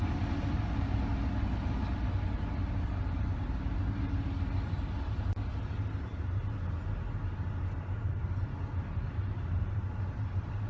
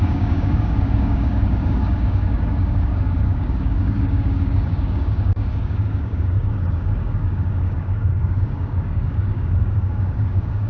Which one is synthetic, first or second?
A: second